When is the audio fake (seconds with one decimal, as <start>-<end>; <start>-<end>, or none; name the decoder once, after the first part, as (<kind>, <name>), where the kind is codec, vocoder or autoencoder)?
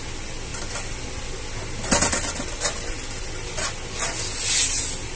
none